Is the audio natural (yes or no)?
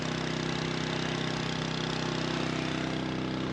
yes